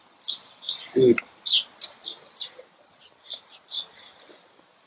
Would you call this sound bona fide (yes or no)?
yes